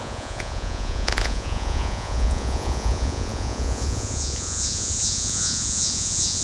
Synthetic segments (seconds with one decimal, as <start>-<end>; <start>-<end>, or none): 0.0-6.4